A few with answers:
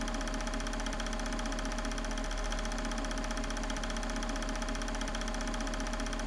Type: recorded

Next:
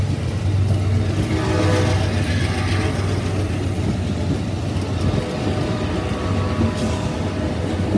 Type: recorded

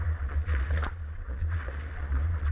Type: remade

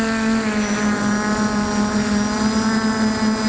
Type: recorded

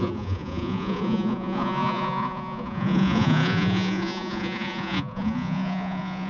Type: remade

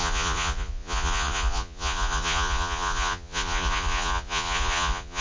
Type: remade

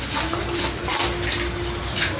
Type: recorded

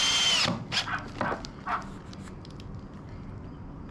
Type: recorded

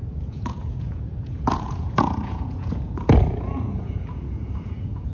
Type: remade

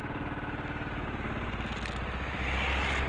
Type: recorded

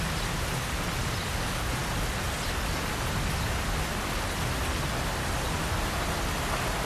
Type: recorded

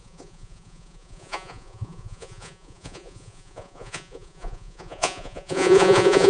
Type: remade